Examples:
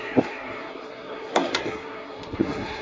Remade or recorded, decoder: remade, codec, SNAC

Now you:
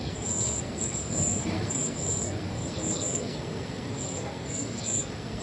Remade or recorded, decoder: remade, codec, SNAC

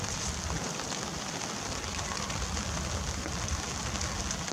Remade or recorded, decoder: recorded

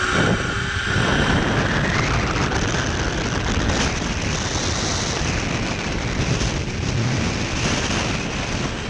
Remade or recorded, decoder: recorded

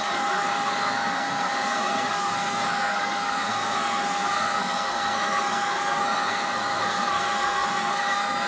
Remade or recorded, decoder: remade, codec, SNAC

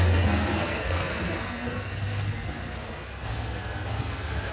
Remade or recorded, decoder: remade, codec, SNAC